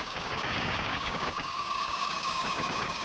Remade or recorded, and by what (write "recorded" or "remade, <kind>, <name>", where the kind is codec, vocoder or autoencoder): remade, codec, DAC